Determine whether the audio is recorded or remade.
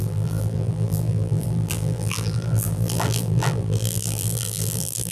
remade